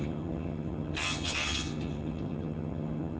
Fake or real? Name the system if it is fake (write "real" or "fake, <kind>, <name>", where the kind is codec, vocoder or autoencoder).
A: fake, vocoder, HiFi-GAN